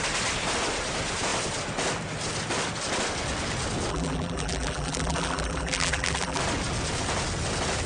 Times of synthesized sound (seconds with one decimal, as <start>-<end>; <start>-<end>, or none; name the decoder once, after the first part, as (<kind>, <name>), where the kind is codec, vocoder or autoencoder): 3.9-6.4 (vocoder, BigVGAN v2)